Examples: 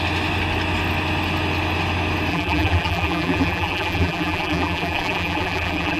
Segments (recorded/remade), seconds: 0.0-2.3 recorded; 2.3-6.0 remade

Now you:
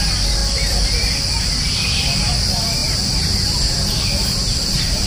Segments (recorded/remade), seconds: 0.0-0.4 recorded; 0.4-1.4 remade; 1.4-2.8 recorded; 2.8-5.1 remade

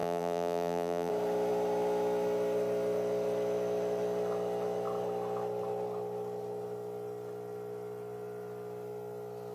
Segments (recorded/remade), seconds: 0.0-1.1 remade; 1.1-9.5 recorded